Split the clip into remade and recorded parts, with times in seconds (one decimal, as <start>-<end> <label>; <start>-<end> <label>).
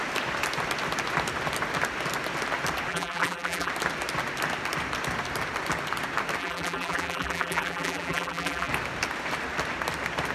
0.0-2.9 recorded; 2.9-3.7 remade; 3.7-6.4 recorded; 6.4-8.7 remade; 8.7-10.3 recorded